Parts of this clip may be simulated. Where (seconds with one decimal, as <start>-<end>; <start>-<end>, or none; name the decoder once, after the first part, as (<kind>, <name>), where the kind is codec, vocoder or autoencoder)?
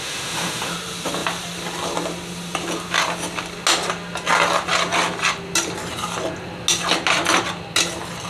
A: 0.0-0.7 (autoencoder, DAC-VAE)